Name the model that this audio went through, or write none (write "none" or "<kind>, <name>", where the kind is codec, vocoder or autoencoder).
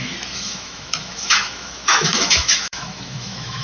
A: autoencoder, DAC-VAE